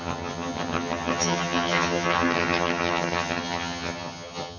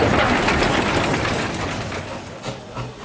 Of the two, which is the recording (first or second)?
second